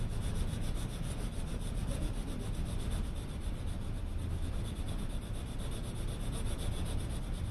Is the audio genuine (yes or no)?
yes